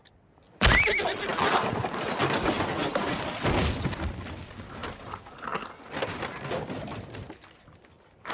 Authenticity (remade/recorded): recorded